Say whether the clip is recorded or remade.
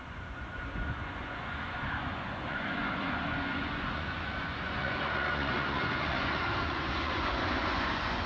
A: remade